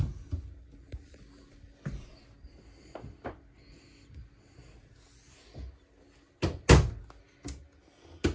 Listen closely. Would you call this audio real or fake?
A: real